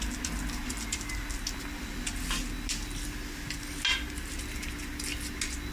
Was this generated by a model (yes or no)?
no